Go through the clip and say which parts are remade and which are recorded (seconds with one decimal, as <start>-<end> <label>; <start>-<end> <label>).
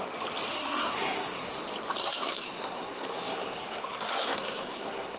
0.0-0.5 recorded; 0.5-1.6 remade; 1.6-2.0 recorded; 2.0-5.2 remade